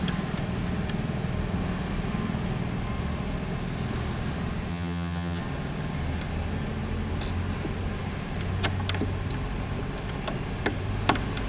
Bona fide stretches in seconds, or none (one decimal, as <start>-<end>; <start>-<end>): 0.0-4.7; 5.4-11.5